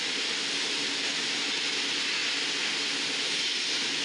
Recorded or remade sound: recorded